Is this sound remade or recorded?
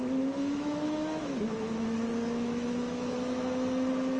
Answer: remade